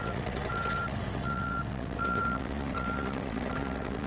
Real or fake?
fake